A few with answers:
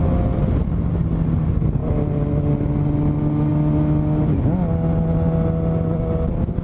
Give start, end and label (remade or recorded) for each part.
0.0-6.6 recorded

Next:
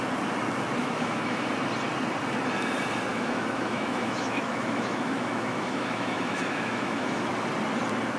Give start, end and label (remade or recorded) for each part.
0.0-0.8 recorded; 0.8-1.5 remade; 1.5-3.1 recorded; 3.1-7.3 remade; 7.3-8.2 recorded

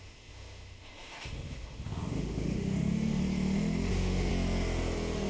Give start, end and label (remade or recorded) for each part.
0.0-3.2 remade; 3.2-3.9 recorded; 3.9-4.3 remade; 4.3-5.3 recorded

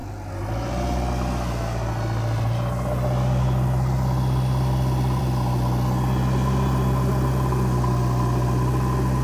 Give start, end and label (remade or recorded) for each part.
0.0-9.2 recorded

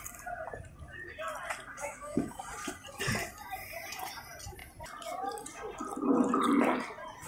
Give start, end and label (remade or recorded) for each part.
0.0-1.8 recorded; 1.8-2.4 remade; 2.4-7.3 recorded

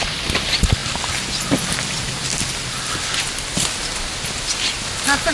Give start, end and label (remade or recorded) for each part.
0.0-5.3 recorded

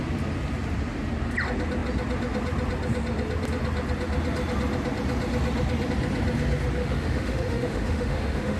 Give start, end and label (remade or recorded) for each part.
0.0-6.8 recorded; 6.8-8.6 remade

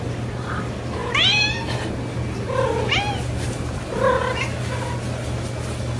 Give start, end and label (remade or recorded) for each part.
0.0-6.0 recorded